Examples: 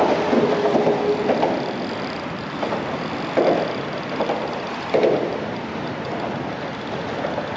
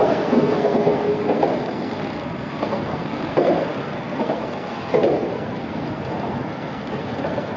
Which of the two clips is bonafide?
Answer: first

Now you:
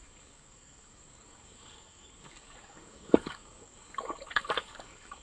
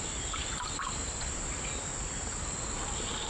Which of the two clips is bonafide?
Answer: second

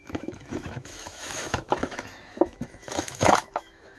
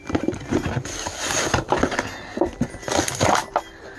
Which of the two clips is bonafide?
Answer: second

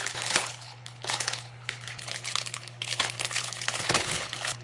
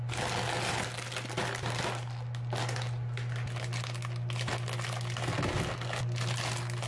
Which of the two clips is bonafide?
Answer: second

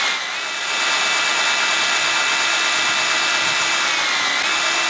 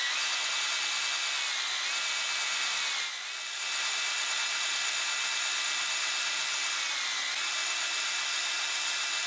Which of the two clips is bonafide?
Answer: first